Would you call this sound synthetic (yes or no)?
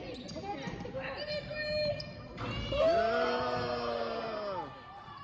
no